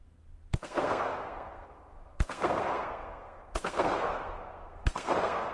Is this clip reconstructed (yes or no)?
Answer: yes